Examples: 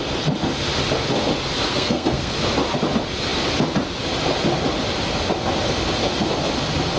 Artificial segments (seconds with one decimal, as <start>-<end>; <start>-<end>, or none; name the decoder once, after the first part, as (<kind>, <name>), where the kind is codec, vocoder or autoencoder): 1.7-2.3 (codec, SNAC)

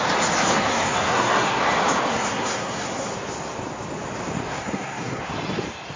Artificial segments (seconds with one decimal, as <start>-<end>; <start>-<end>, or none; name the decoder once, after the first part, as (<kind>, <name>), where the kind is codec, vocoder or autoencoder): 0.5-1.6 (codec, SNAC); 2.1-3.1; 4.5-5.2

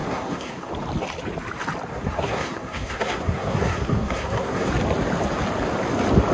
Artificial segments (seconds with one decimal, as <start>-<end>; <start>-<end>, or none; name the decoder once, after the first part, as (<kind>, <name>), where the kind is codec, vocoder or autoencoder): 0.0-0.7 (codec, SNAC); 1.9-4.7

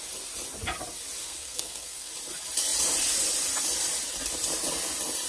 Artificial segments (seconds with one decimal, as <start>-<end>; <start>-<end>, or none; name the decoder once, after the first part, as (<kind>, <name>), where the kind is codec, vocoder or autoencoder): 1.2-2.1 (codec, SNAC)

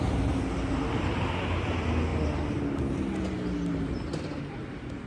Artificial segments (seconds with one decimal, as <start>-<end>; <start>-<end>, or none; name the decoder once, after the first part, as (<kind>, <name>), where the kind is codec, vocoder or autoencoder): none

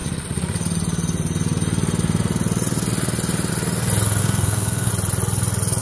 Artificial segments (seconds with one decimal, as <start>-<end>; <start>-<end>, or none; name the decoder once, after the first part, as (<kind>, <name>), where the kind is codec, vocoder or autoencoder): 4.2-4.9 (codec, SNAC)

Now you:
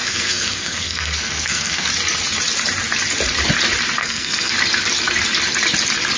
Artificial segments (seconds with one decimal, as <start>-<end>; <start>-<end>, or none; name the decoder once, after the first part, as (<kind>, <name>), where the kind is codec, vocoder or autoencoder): 0.0-1.9 (codec, SNAC); 4.0-4.5